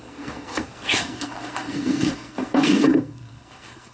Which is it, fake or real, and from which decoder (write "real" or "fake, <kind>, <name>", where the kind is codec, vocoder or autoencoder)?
fake, codec, SNAC